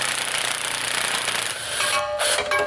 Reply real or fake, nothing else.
real